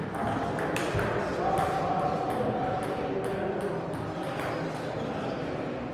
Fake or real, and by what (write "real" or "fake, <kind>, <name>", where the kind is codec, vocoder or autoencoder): real